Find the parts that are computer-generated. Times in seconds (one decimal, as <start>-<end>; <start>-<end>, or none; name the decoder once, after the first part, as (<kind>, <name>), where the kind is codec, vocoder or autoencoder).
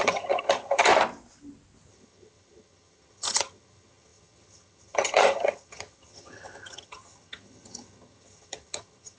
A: 0.0-0.9 (vocoder, HiFi-GAN); 1.9-9.2